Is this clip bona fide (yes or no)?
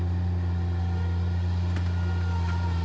yes